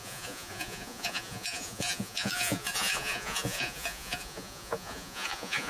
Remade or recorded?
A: remade